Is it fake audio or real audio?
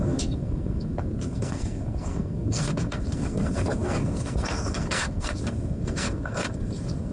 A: fake